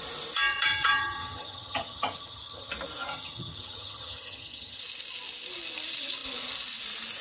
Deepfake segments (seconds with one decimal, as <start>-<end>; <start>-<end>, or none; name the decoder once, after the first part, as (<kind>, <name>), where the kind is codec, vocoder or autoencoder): 0.5-2.7 (vocoder, HiFi-GAN); 3.1-4.8